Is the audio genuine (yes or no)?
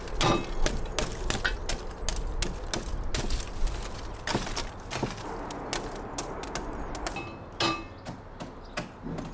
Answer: yes